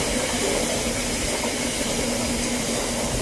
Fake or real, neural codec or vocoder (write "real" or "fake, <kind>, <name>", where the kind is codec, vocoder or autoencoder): real